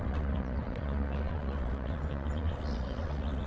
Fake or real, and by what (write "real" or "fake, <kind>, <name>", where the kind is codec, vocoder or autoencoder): fake, vocoder, WaveNeXt